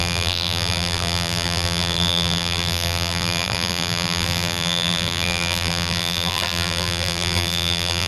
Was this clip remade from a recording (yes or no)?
yes